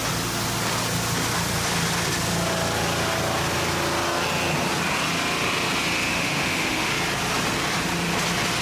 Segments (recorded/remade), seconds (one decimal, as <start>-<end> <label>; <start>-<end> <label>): 0.0-6.1 recorded; 6.1-6.9 remade; 6.9-8.6 recorded